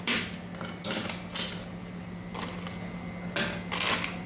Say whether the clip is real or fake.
real